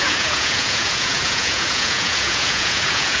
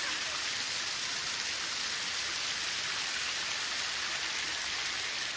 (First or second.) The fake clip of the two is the first